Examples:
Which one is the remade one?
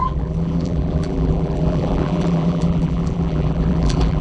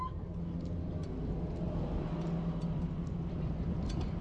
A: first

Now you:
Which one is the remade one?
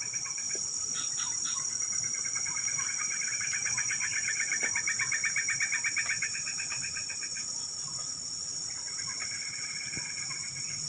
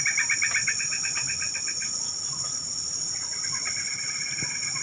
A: first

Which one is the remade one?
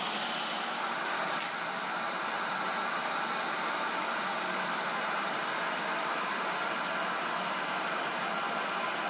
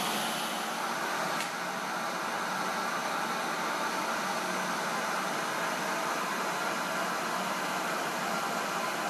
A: first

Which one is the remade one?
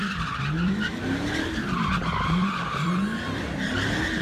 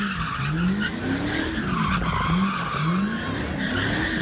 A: first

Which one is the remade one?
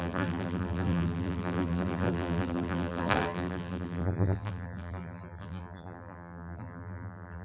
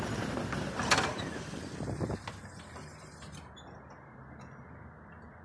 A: first